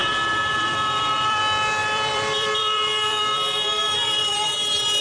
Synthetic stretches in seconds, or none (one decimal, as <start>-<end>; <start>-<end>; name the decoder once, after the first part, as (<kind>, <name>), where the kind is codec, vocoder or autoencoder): 0.0-1.4 (vocoder, BigVGAN v2); 1.8-5.0